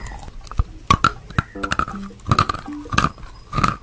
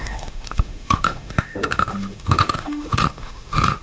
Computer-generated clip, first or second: second